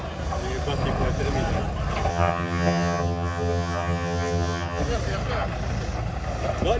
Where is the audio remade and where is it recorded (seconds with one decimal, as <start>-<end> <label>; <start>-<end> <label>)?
0.0-2.1 recorded; 2.1-4.8 remade; 4.8-6.8 recorded